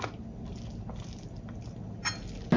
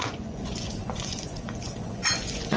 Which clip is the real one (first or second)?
first